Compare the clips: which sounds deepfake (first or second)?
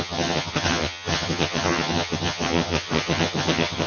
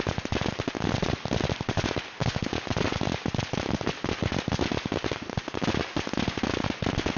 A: first